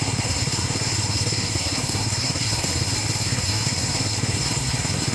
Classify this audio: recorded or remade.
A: remade